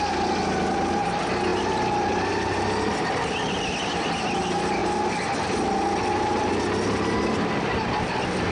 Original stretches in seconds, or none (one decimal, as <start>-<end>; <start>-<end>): 0.0-8.5

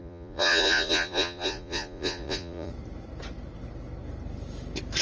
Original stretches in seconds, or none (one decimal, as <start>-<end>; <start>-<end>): 2.7-5.0

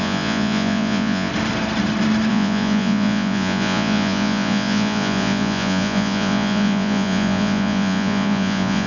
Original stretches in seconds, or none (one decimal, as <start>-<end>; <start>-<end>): 1.3-2.3

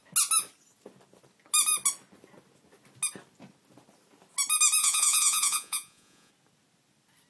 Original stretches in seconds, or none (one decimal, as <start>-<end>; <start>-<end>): 0.0-4.8; 6.3-7.3

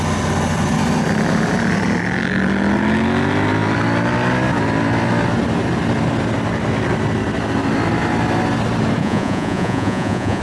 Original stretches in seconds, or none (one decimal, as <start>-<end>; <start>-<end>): 0.0-9.0

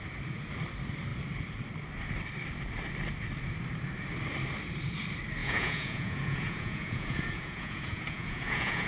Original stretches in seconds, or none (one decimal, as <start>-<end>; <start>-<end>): 0.0-5.4